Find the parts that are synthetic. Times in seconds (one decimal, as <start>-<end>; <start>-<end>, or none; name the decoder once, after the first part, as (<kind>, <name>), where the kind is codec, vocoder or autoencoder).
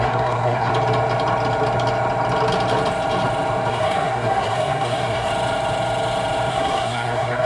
0.0-0.7 (codec, SNAC); 3.7-5.3; 6.5-7.5